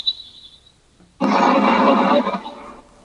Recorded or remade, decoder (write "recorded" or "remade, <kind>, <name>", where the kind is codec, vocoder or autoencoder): recorded